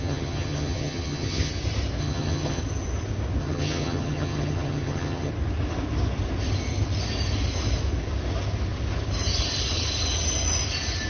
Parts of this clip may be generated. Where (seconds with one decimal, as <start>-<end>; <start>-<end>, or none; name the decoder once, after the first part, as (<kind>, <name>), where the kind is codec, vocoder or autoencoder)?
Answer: 0.0-1.5 (vocoder, HiFi-GAN); 2.0-2.6; 3.4-5.3